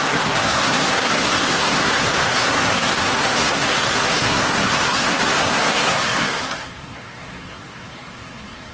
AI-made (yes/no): yes